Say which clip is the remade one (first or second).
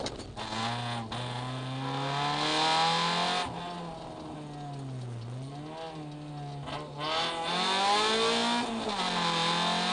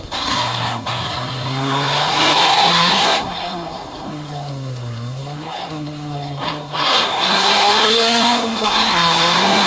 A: second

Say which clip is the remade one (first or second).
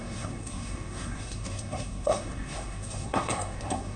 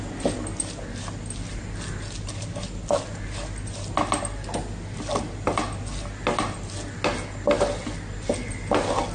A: first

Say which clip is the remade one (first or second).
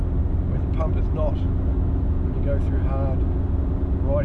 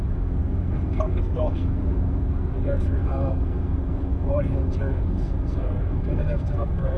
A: second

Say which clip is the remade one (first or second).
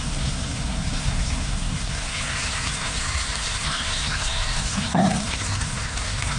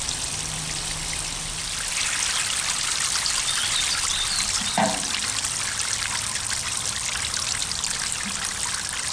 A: first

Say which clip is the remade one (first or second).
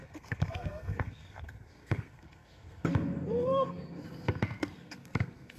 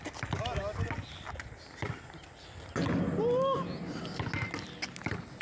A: first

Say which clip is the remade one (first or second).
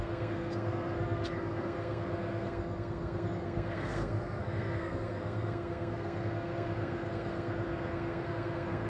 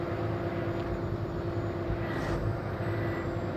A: first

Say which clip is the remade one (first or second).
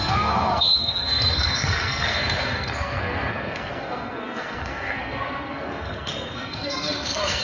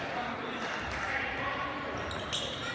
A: first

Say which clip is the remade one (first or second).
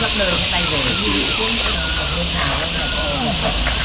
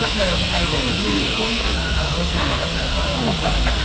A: second